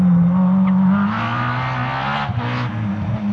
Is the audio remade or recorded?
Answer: recorded